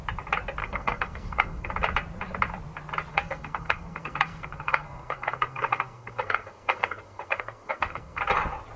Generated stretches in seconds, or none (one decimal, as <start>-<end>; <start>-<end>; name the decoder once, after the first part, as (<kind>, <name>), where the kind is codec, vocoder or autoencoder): 0.6-1.7 (codec, SNAC); 3.1-8.2

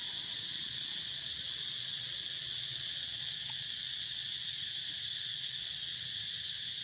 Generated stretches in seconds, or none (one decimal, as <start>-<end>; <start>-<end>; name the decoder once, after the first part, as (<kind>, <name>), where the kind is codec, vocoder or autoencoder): 0.5-4.6 (vocoder, Vocos); 5.3-6.0

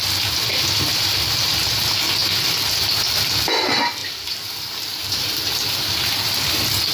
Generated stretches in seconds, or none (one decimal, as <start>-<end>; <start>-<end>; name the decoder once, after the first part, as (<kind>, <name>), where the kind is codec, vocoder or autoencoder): 0.9-1.5 (vocoder, BigVGAN v2); 4.0-6.5

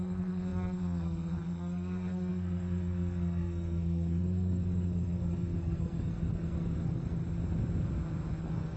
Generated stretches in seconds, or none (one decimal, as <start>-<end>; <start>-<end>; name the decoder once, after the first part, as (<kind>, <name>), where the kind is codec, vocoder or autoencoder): 0.0-7.2 (codec, SNAC); 8.4-8.8

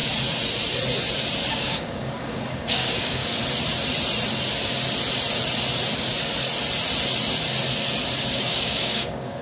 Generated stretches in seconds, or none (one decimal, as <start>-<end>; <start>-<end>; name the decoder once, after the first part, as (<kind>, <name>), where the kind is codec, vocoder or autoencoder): 1.5-3.2 (codec, DAC); 8.2-9.4

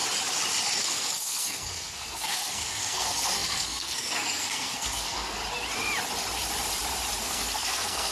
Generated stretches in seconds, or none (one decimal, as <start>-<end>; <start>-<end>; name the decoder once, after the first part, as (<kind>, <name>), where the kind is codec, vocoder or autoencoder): 0.8-5.4 (codec, SNAC); 7.2-8.1

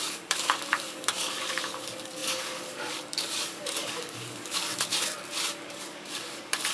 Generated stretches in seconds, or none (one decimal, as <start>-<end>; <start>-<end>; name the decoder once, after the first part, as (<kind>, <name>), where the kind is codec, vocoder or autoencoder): 0.0-4.9 (codec, DAC); 5.5-6.7

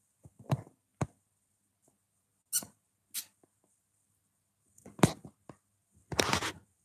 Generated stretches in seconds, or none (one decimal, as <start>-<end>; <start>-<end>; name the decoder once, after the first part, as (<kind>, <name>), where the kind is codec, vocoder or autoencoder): none